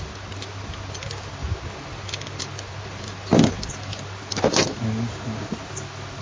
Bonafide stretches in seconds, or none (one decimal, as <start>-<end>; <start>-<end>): 0.0-6.2